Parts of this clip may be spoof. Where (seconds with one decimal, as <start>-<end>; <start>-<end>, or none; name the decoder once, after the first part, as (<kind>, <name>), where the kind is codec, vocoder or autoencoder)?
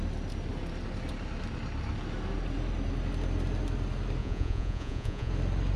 4.2-5.3 (vocoder, Vocos)